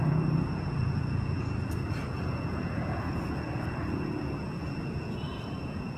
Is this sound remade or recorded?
remade